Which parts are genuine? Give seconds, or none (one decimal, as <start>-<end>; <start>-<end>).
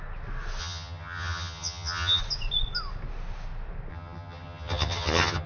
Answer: 0.0-0.6; 2.2-3.9